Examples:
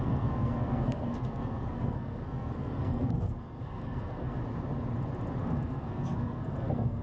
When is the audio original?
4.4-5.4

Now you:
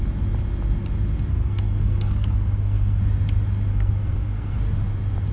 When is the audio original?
0.0-1.3; 3.0-3.7; 4.6-5.3

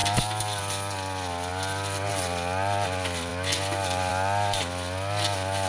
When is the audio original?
0.0-5.7

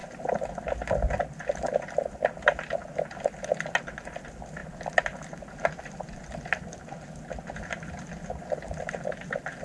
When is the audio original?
0.0-9.6